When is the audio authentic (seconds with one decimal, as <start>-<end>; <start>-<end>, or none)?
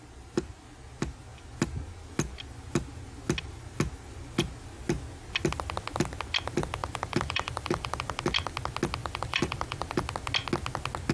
0.0-6.8; 8.0-9.0; 10.0-11.1